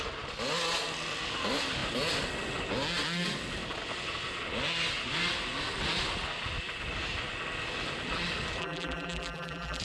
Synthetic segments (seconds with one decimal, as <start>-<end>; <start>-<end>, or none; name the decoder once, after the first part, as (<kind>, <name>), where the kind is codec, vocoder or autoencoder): 8.6-9.8 (vocoder, BigVGAN v2)